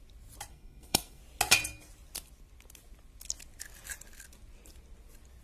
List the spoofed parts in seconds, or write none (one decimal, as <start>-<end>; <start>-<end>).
0.5-1.2